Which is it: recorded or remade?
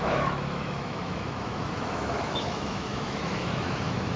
remade